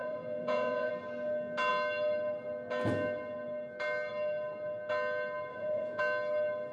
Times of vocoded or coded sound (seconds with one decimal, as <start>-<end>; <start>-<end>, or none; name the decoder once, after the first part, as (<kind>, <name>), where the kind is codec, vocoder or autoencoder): 0.0-0.9 (vocoder, Vocos); 5.5-6.0

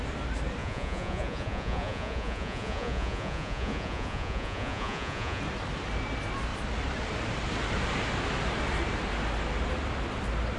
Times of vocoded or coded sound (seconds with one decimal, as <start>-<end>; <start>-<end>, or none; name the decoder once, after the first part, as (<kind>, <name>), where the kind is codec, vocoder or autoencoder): 0.6-5.4 (vocoder, Vocos)

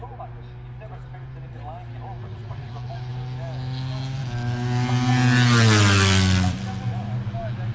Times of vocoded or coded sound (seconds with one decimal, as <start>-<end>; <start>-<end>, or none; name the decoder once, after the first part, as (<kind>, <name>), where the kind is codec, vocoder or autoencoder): 2.2-2.7 (vocoder, Vocos)